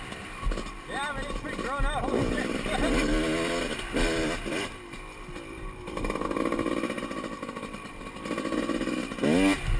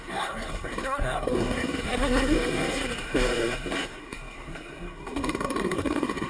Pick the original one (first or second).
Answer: first